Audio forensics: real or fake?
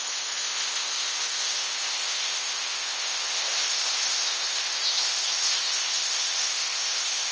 fake